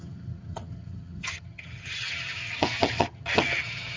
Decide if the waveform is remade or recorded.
remade